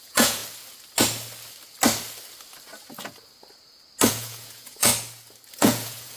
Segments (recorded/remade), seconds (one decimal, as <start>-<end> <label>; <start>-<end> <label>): 0.0-0.4 remade; 0.4-4.1 recorded; 4.1-4.9 remade; 4.9-5.5 recorded; 5.5-6.2 remade